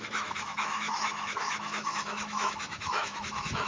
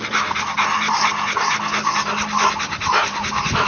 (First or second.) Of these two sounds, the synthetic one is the first